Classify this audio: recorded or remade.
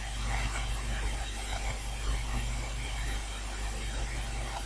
recorded